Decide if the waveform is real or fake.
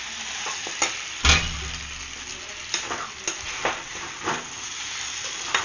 real